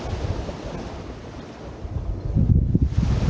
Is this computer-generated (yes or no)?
no